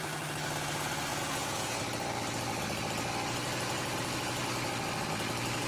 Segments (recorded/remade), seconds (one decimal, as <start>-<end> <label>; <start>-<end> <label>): 0.0-1.1 recorded; 1.1-1.8 remade; 1.8-5.7 recorded